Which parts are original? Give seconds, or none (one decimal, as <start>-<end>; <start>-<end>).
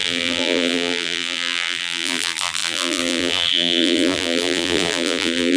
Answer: none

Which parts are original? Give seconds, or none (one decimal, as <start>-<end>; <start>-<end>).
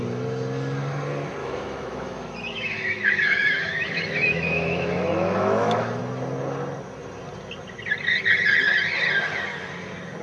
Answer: 0.0-1.4; 6.0-10.2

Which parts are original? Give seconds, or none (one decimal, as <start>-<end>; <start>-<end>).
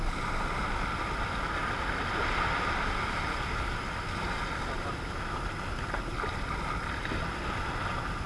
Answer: 0.0-8.3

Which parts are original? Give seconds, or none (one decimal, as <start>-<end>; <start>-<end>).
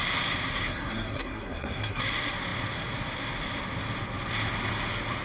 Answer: 0.0-0.7; 2.0-5.2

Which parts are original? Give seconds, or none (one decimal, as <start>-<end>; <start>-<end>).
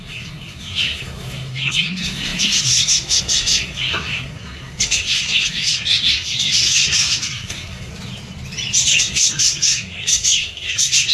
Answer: 7.9-9.0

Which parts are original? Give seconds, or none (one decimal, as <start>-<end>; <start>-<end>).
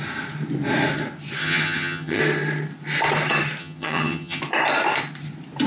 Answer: 0.0-1.4; 2.2-3.6; 4.4-5.7